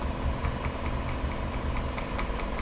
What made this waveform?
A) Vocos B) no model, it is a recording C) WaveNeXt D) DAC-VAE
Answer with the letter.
B